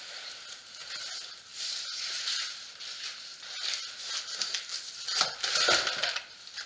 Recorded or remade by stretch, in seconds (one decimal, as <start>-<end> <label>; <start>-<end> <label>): 0.0-6.7 recorded